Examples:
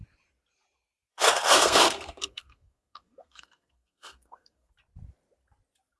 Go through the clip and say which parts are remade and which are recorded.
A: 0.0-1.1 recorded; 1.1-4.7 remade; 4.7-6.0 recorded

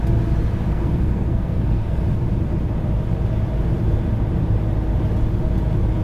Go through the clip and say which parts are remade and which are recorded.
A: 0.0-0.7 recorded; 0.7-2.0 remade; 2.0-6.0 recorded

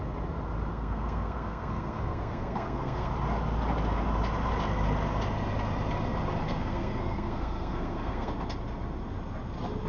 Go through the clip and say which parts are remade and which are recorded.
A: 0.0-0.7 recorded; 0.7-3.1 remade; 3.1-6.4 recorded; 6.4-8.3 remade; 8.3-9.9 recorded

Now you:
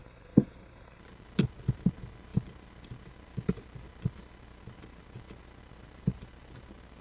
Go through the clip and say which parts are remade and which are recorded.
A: 0.0-1.0 remade; 1.0-7.0 recorded

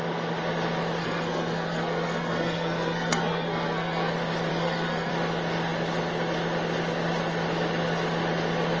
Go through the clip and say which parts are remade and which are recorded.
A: 0.0-1.0 recorded; 1.0-4.1 remade; 4.1-4.5 recorded; 4.5-5.1 remade; 5.1-8.8 recorded

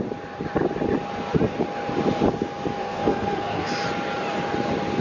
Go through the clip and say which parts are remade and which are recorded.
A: 0.0-2.8 recorded; 2.8-3.7 remade; 3.7-5.0 recorded

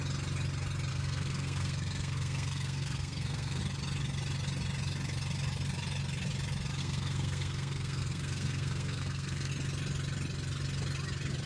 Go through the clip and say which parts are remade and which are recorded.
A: 0.0-0.9 recorded; 0.9-3.6 remade; 3.6-6.8 recorded; 6.8-9.5 remade; 9.5-11.5 recorded

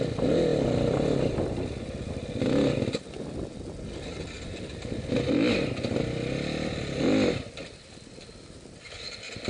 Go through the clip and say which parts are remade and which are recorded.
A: 0.0-9.5 recorded